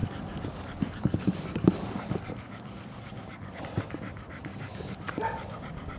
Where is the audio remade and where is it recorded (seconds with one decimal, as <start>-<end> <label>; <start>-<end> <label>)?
0.0-3.6 remade; 3.6-4.5 recorded; 4.5-5.1 remade; 5.1-6.0 recorded